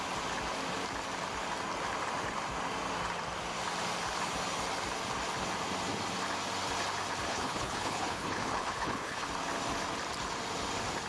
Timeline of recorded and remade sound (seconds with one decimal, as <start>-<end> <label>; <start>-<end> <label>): 0.0-7.3 recorded; 7.3-9.3 remade; 9.3-11.1 recorded